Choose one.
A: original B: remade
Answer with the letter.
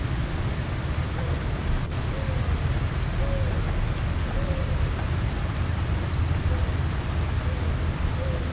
A